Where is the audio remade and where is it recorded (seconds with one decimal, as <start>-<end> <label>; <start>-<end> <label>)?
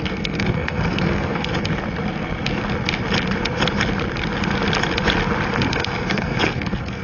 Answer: 0.0-1.5 remade; 1.5-5.7 recorded; 5.7-7.0 remade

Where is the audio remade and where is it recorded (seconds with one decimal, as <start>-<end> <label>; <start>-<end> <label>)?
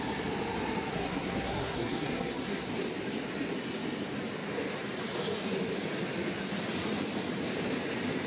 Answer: 0.0-0.9 recorded; 0.9-2.7 remade; 2.7-8.3 recorded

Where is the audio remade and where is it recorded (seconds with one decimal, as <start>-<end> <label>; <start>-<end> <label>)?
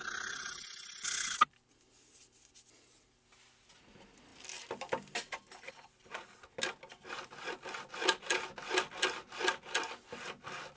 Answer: 0.0-10.8 recorded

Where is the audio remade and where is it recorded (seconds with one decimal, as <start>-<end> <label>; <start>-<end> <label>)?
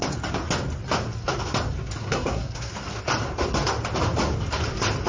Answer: 0.0-2.0 recorded; 2.0-2.7 remade; 2.7-5.1 recorded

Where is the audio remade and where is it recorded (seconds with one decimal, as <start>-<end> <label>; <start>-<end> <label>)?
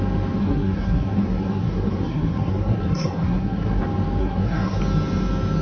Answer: 0.0-0.4 recorded; 0.4-3.8 remade; 3.8-4.2 recorded; 4.2-4.8 remade; 4.8-5.6 recorded